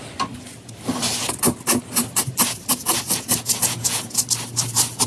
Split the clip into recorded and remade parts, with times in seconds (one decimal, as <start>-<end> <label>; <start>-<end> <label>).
0.0-2.7 recorded; 2.7-4.2 remade; 4.2-5.1 recorded